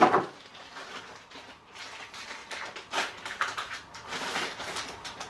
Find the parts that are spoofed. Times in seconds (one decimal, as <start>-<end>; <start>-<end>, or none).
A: 0.5-1.8; 2.4-5.3